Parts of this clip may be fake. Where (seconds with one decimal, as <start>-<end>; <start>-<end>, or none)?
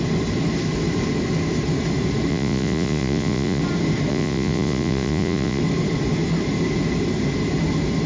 2.3-3.6; 4.1-5.6